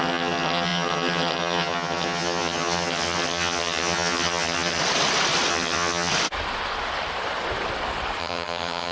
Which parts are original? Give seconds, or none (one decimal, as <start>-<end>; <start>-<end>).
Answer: 4.8-5.5; 6.1-8.2